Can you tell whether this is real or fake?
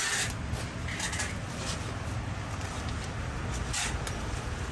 real